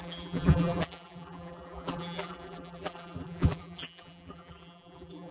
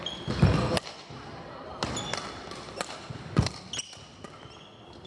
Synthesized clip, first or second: first